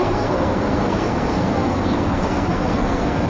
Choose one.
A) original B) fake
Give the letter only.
B